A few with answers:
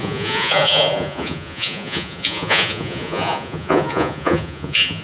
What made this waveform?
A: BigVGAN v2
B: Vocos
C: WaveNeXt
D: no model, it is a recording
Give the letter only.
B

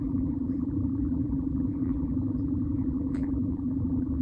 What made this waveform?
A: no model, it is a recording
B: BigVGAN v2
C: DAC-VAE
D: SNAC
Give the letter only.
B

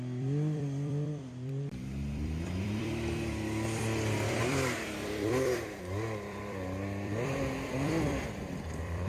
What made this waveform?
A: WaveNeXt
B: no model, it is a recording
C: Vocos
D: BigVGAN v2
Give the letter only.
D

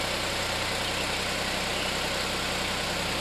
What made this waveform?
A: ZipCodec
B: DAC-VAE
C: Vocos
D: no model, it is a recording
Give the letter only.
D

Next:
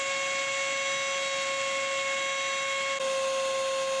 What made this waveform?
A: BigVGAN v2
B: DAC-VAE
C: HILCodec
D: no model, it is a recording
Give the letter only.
D